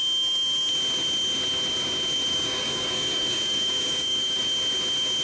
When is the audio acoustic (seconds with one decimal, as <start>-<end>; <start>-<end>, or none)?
0.0-2.3; 4.4-5.2